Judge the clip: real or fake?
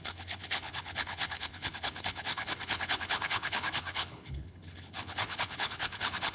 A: fake